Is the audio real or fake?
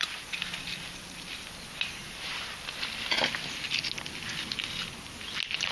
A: real